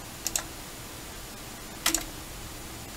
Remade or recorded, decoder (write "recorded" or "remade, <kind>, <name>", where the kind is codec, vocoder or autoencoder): recorded